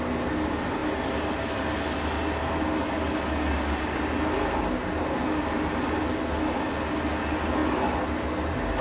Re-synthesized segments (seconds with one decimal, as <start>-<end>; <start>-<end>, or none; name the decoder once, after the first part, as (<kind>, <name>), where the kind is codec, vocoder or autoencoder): none